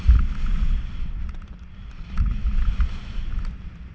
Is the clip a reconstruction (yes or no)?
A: no